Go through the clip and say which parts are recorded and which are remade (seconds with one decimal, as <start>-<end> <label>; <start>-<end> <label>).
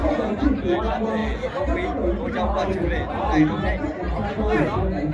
0.0-0.6 remade; 0.6-5.1 recorded